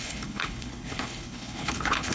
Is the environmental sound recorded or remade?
remade